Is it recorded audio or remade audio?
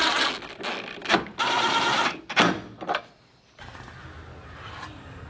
recorded